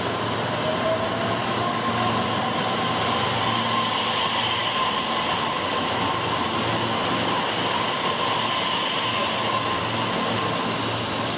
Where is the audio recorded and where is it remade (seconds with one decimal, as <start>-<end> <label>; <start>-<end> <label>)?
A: 0.0-1.4 recorded; 1.4-2.1 remade; 2.1-11.4 recorded